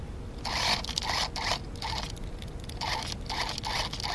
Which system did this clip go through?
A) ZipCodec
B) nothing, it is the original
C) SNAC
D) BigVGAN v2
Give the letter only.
B